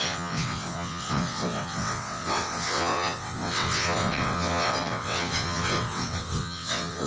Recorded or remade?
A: remade